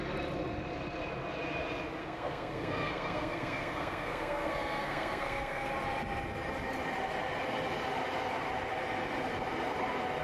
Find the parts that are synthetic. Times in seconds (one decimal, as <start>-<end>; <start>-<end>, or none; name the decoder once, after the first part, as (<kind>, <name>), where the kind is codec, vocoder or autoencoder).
2.0-5.7 (codec, SNAC)